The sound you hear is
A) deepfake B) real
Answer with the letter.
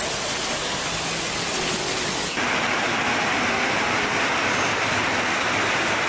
B